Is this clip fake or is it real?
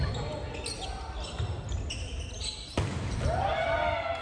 real